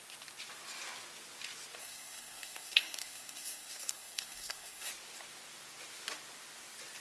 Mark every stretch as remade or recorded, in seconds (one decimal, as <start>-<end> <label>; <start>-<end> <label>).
0.0-1.8 recorded; 1.8-4.9 remade; 4.9-7.0 recorded